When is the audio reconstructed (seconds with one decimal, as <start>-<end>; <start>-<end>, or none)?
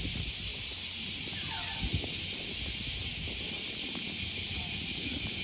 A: none